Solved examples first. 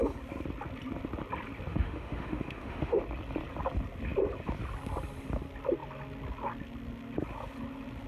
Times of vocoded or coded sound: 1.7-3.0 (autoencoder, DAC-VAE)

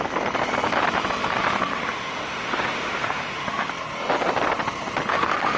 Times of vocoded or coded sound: 1.7-3.7 (autoencoder, DAC-VAE); 5.1-5.6